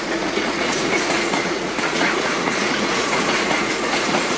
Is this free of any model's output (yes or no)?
no